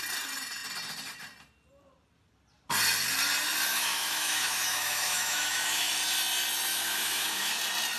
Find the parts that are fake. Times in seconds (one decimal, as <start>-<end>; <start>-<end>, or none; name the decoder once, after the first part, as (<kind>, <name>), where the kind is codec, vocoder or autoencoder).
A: 3.7-5.9 (autoencoder, DAC-VAE); 6.7-7.6